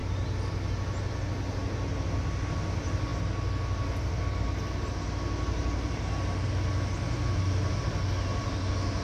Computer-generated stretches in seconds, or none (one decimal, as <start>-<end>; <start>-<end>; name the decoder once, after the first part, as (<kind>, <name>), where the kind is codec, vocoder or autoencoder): none